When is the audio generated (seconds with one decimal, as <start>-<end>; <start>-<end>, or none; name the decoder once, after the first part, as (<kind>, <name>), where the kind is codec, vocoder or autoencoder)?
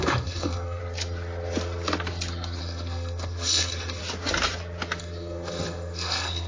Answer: 0.0-0.8 (codec, SNAC); 2.6-4.0; 5.0-6.5